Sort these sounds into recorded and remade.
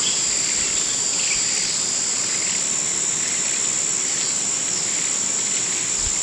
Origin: recorded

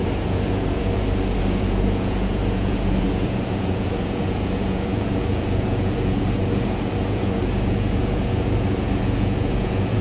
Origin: remade